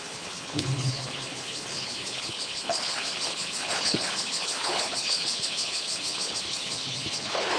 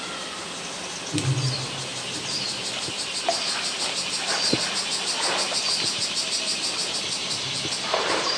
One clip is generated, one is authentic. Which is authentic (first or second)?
second